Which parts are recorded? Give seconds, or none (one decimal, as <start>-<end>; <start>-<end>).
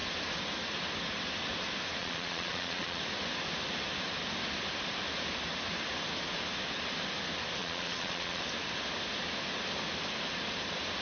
0.0-2.0; 3.0-7.6; 8.4-11.0